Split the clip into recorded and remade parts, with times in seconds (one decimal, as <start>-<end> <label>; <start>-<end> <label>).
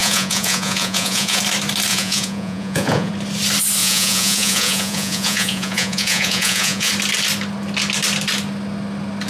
0.0-1.4 remade; 1.4-1.9 recorded; 1.9-3.1 remade; 3.1-3.8 recorded; 3.8-6.9 remade; 6.9-9.3 recorded